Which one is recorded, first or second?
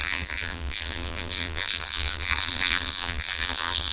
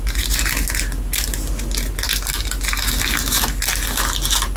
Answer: second